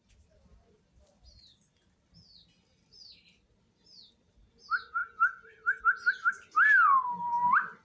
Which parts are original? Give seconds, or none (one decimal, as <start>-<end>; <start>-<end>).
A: 0.0-7.8